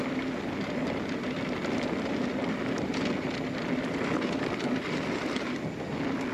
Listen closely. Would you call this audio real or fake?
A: real